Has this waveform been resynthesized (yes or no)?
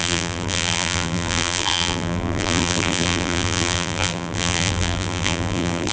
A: yes